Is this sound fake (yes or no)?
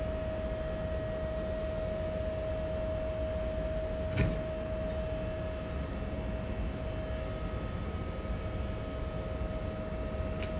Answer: no